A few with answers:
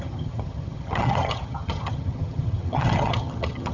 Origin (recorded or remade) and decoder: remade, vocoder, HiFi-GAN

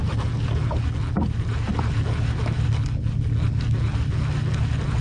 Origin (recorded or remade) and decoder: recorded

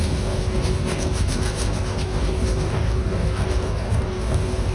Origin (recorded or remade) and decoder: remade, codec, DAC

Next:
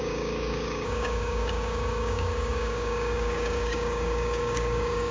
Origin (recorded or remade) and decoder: remade, codec, DAC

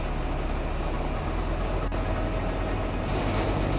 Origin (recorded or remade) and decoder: recorded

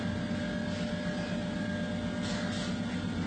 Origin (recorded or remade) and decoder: recorded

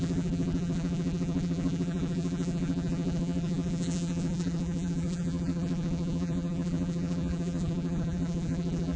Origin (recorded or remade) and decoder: remade, vocoder, BigVGAN v2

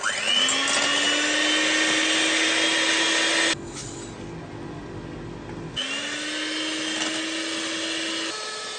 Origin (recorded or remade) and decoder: recorded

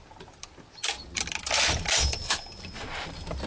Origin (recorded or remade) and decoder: recorded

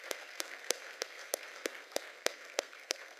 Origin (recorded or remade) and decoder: remade, codec, SNAC